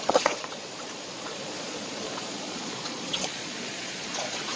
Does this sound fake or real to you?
fake